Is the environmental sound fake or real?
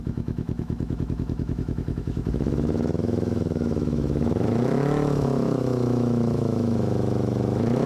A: fake